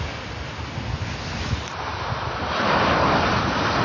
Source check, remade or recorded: recorded